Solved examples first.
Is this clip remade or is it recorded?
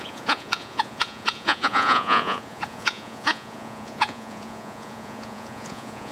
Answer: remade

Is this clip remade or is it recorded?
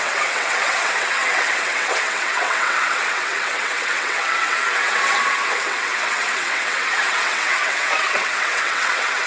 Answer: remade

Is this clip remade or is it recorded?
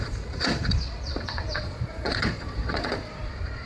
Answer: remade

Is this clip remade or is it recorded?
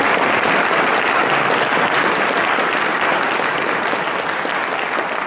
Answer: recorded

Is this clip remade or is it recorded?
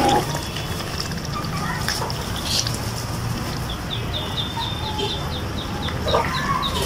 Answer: recorded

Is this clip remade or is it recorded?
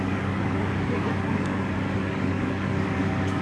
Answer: remade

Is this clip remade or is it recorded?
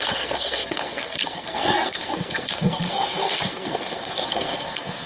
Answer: remade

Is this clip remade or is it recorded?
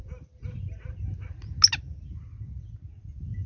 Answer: recorded